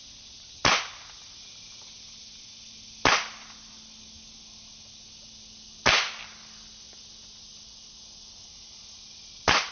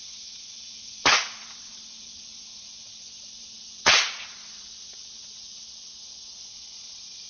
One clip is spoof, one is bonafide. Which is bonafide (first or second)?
first